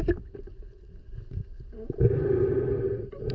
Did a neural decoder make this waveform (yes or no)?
no